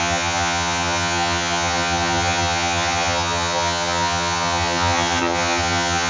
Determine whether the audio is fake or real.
fake